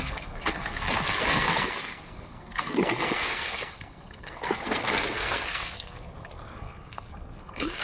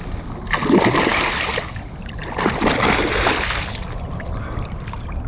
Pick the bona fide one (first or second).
second